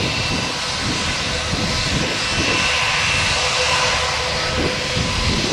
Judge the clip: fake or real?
real